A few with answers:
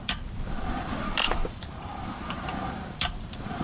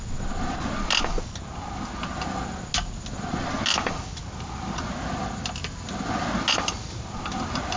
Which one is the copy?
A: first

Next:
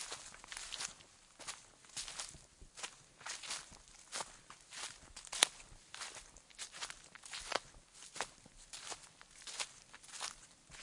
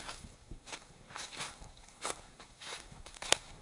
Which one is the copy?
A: second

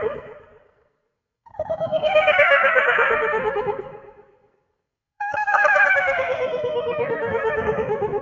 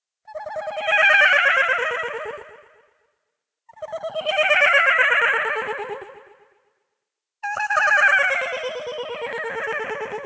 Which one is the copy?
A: first